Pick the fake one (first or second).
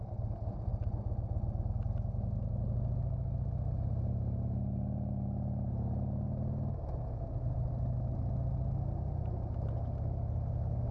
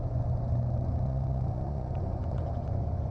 second